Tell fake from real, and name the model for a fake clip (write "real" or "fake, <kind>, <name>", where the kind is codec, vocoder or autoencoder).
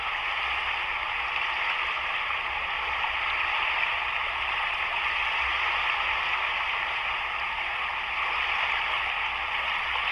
real